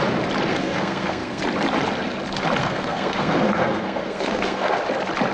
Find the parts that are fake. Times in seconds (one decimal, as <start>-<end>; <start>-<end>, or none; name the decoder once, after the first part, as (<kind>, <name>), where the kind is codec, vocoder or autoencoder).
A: 0.5-1.4 (codec, SNAC); 2.6-4.8